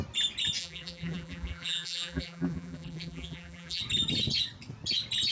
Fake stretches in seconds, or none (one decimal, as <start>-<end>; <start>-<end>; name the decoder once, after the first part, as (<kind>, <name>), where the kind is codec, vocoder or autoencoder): 0.6-3.8 (vocoder, BigVGAN v2)